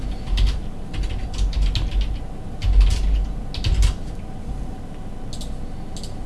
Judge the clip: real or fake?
real